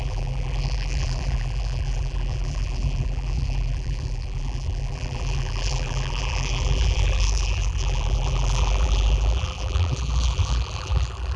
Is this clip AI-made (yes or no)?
yes